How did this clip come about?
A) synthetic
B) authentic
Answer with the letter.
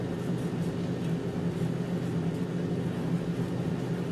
B